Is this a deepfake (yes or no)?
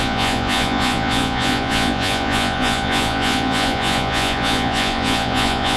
yes